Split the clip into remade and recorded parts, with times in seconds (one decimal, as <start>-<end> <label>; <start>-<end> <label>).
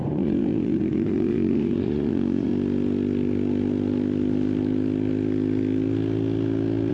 0.0-2.5 remade; 2.5-6.9 recorded